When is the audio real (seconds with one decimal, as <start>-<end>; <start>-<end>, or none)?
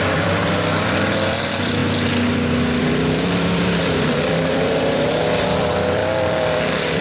1.8-2.8